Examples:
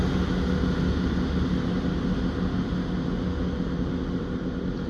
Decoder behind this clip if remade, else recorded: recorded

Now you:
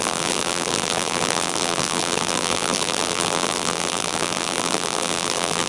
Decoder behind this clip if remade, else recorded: remade, vocoder, BigVGAN v2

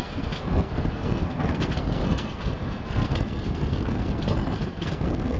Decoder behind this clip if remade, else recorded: remade, codec, SNAC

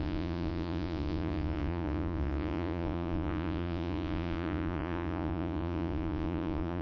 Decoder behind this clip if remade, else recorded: remade, vocoder, Vocos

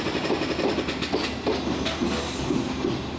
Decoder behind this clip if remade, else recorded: recorded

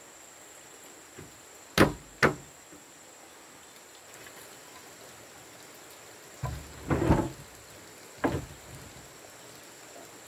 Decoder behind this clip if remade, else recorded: recorded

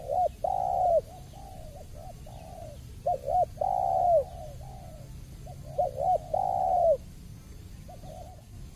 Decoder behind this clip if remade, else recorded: recorded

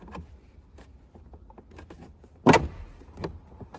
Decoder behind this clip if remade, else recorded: recorded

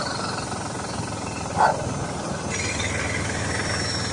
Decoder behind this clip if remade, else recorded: recorded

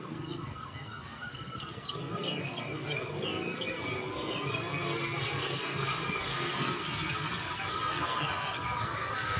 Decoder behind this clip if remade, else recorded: remade, codec, SNAC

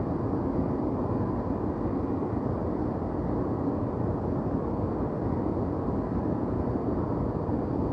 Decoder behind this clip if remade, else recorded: recorded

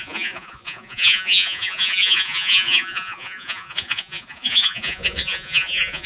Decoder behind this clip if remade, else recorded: remade, vocoder, Vocos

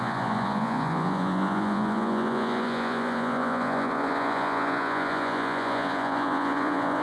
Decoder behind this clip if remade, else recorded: remade, vocoder, Vocos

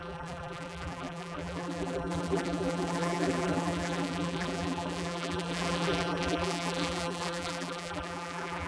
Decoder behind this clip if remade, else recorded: remade, vocoder, BigVGAN v2